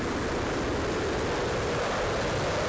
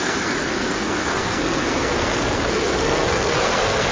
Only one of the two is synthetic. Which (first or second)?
second